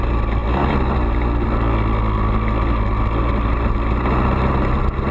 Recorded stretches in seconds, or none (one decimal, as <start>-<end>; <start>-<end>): 0.0-5.1